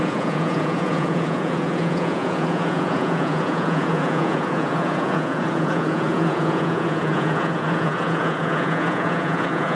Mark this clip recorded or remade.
remade